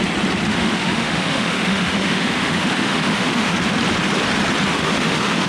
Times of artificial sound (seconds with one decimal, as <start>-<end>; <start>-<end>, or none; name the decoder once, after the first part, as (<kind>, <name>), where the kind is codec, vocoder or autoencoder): 0.5-3.5 (autoencoder, DAC-VAE); 4.7-5.5